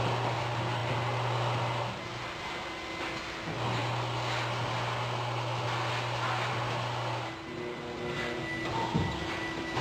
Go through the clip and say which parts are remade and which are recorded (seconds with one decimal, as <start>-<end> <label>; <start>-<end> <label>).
0.0-9.8 recorded